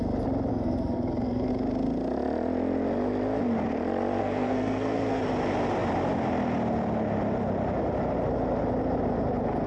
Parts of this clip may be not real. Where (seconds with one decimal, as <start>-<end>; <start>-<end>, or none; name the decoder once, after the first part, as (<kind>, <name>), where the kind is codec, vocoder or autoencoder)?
0.5-1.5 (codec, SNAC); 4.2-5.2